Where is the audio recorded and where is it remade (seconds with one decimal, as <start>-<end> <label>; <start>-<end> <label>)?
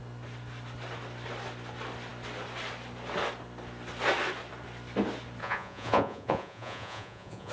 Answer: 0.0-5.4 recorded; 5.4-7.5 remade